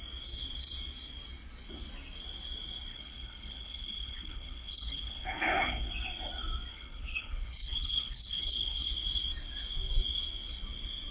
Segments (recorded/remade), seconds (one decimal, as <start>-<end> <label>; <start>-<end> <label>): 0.0-2.9 recorded; 2.9-5.9 remade; 5.9-6.7 recorded; 6.7-8.9 remade; 8.9-11.1 recorded